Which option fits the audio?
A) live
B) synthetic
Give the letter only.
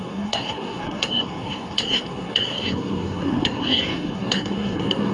B